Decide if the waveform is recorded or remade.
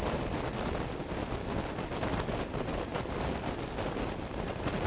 recorded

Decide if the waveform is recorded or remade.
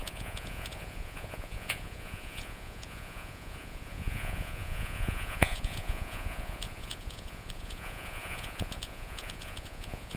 remade